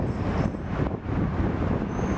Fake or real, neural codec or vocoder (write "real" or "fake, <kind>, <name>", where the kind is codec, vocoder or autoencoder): real